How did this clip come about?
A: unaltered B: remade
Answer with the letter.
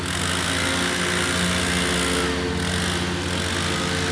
A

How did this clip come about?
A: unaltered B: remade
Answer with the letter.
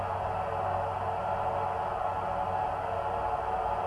A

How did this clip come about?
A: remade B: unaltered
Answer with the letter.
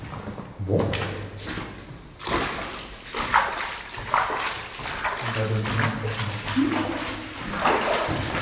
B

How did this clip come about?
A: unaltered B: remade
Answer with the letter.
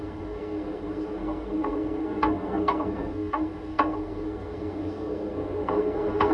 B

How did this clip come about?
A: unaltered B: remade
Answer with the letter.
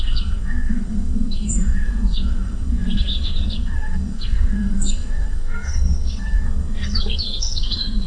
B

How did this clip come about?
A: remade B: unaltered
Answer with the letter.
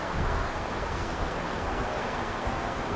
A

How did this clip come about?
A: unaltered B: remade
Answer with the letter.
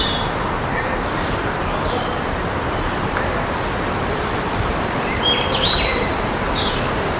B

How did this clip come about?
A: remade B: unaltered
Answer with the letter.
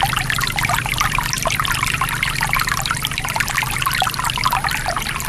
B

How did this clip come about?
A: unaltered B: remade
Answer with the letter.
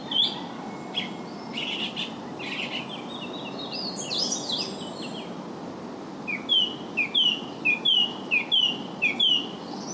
A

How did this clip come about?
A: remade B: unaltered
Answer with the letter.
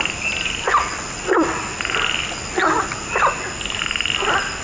B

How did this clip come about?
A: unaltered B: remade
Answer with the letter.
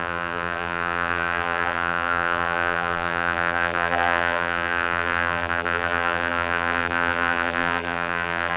B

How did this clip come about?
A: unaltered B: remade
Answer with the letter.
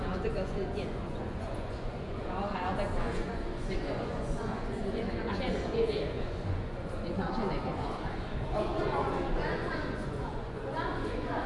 B